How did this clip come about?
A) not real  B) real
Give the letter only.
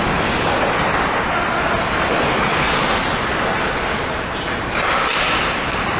B